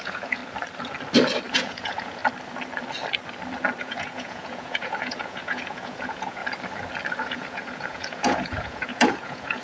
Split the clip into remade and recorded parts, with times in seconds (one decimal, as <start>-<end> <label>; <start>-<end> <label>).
0.0-0.4 remade; 0.4-1.5 recorded; 1.5-2.2 remade; 2.2-3.8 recorded; 3.8-6.4 remade; 6.4-7.2 recorded; 7.2-9.6 remade